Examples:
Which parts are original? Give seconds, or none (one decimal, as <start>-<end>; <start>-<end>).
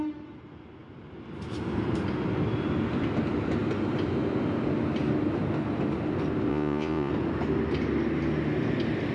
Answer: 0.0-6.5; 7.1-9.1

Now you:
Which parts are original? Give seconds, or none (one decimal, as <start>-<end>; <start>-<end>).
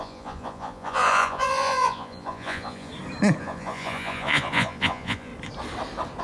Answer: 2.9-3.4; 5.3-6.2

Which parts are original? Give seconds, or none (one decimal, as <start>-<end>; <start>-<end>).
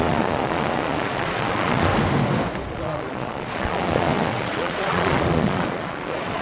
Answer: 1.9-2.7